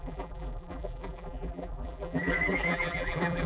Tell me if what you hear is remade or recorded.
remade